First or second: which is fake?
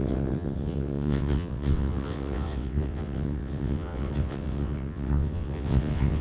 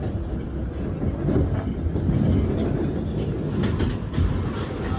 first